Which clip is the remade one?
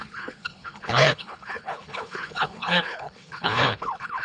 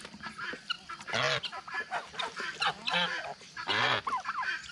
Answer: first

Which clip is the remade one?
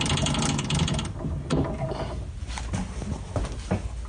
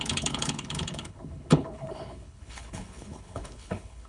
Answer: second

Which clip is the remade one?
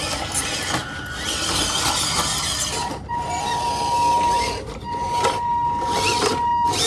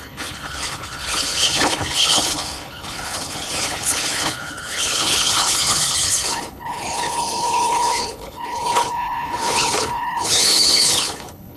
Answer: second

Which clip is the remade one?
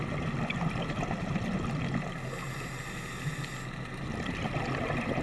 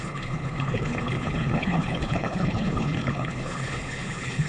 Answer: second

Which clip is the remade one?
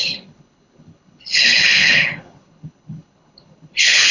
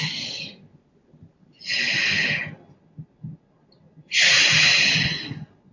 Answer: first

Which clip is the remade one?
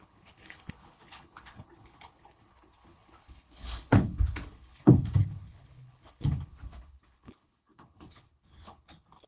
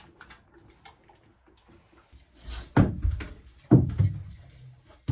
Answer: first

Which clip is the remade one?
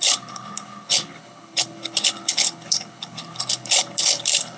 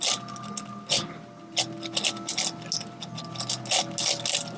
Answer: first